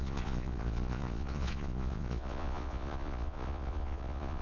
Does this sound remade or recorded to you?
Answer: remade